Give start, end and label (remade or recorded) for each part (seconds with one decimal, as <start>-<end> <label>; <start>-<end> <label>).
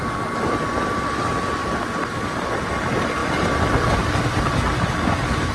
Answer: 0.0-5.5 recorded